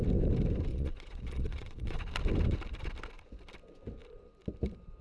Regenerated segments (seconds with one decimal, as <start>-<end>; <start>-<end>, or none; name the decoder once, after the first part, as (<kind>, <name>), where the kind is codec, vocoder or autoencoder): 0.7-2.0 (vocoder, Vocos)